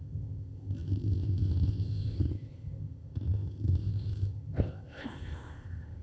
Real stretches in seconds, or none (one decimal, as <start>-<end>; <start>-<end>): none